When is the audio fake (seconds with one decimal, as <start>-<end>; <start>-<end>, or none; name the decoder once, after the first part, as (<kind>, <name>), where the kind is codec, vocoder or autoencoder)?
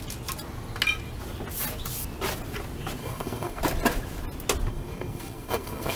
3.0-3.6 (codec, SNAC); 4.7-6.0